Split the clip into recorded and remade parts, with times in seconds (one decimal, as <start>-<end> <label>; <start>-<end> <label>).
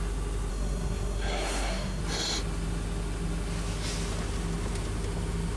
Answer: 0.0-0.5 recorded; 0.5-2.0 remade; 2.0-5.6 recorded